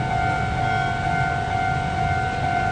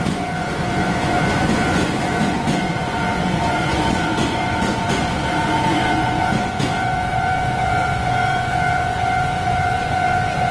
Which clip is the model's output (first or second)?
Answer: second